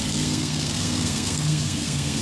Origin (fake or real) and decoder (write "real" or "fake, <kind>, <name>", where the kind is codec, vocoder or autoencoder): fake, codec, SNAC